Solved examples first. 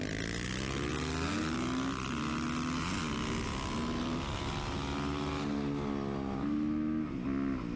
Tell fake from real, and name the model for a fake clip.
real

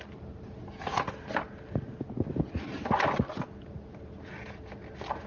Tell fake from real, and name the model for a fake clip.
real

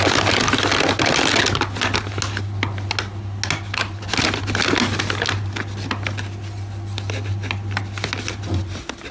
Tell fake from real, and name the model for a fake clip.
real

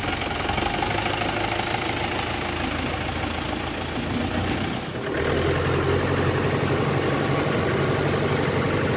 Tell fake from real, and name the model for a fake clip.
real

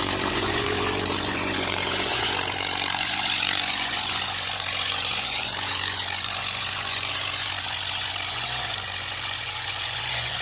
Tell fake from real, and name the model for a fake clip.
fake, vocoder, Vocos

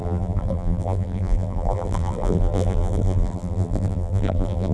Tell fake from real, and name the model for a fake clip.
fake, vocoder, BigVGAN v2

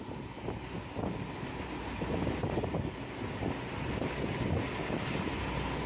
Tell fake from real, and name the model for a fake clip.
real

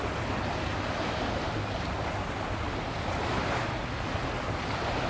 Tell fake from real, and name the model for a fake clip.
real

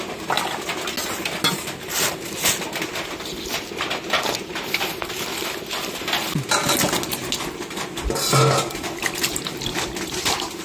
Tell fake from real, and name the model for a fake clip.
real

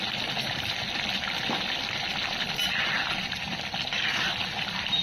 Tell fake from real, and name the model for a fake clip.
real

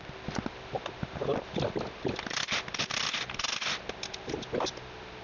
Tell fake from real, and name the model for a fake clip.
real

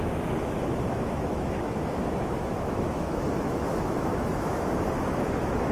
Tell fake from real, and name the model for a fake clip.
fake, autoencoder, DAC-VAE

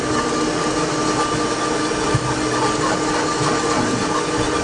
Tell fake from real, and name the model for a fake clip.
real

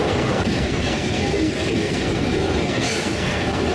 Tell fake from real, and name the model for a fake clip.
fake, codec, SNAC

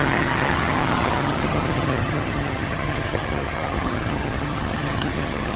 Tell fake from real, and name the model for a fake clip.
fake, vocoder, HiFi-GAN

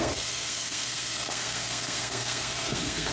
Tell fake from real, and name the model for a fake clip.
fake, codec, SNAC